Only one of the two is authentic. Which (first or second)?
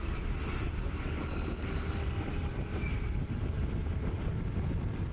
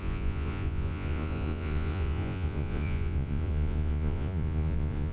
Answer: first